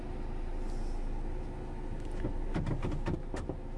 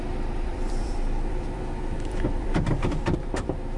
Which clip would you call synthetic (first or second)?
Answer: second